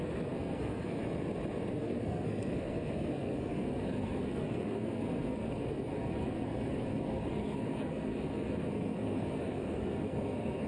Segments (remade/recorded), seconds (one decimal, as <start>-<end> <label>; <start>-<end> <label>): 0.0-1.0 remade; 1.0-1.7 recorded; 1.7-10.7 remade